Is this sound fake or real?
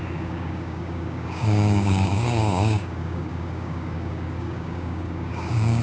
fake